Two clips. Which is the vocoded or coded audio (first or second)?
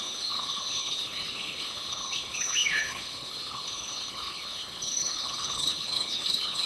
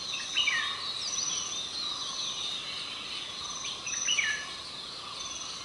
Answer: first